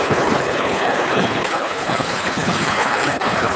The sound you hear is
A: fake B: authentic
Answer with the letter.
A